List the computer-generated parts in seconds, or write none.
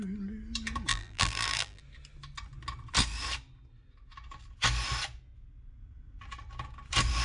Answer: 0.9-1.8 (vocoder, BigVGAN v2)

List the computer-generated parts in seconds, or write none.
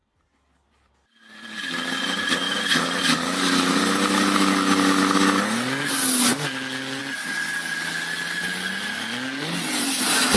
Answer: 0.0-2.0 (vocoder, BigVGAN v2)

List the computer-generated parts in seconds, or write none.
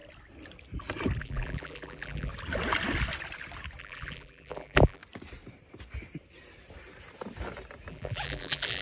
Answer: 1.2-2.3 (vocoder, BigVGAN v2); 3.8-5.0; 7.9-8.8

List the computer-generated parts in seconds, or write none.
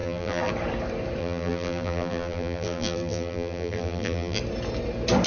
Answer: 0.0-0.5 (vocoder, BigVGAN v2); 1.2-4.4